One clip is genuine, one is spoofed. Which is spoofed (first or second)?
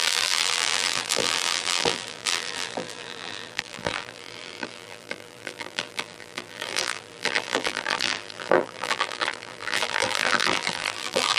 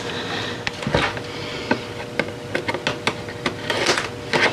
first